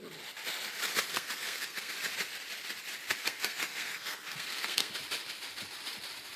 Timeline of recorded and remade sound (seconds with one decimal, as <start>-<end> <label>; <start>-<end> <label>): 0.0-1.1 recorded; 1.1-1.9 remade; 1.9-3.2 recorded; 3.2-4.9 remade; 4.9-6.4 recorded